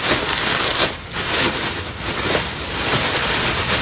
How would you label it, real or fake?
real